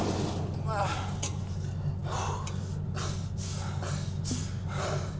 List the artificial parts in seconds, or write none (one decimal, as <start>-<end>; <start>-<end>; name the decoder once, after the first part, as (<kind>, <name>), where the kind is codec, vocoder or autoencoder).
none

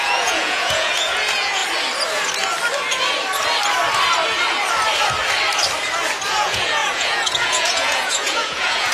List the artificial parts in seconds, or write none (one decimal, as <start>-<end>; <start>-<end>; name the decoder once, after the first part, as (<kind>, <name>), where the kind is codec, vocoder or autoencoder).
0.0-1.6 (vocoder, Vocos); 6.3-8.9